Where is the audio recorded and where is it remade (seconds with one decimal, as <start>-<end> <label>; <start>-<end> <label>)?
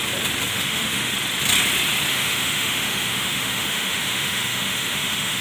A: 0.0-0.5 recorded; 0.5-1.1 remade; 1.1-2.1 recorded; 2.1-5.4 remade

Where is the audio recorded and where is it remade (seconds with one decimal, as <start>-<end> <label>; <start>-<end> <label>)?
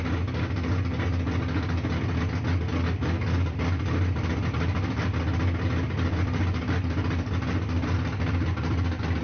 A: 0.0-4.7 recorded; 4.7-9.2 remade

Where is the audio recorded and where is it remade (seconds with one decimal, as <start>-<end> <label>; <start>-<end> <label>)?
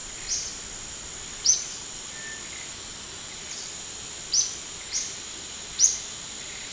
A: 0.0-6.7 recorded